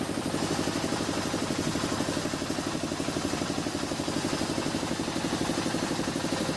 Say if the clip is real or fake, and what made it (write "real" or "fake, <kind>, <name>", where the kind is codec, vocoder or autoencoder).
fake, vocoder, BigVGAN v2